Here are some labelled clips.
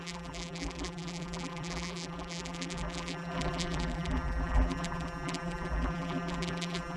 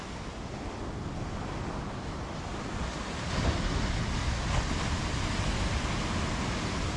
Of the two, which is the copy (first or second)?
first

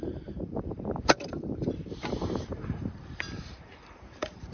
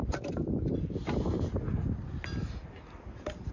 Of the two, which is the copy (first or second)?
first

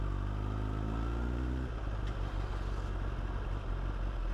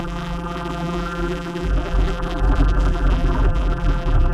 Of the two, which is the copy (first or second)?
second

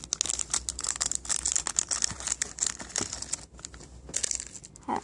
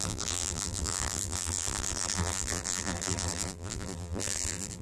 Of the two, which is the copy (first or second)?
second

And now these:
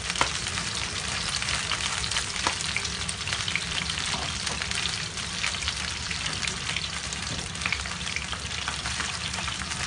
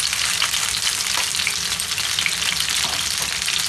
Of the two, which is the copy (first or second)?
first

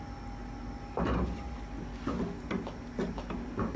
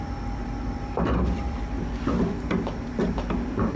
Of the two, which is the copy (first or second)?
second